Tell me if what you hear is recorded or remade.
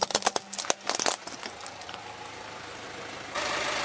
recorded